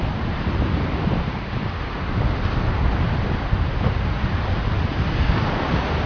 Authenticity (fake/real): real